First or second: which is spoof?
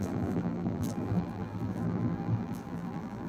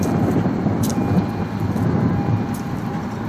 first